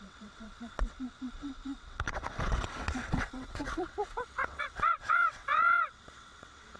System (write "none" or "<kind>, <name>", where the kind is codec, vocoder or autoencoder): vocoder, WaveNeXt